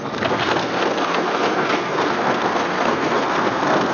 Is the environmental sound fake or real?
fake